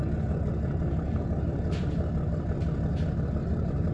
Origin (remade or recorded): recorded